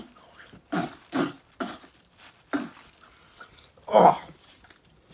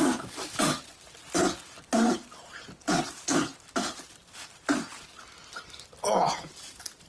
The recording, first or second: second